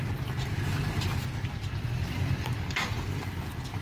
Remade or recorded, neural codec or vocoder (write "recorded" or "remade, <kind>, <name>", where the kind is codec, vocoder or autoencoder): recorded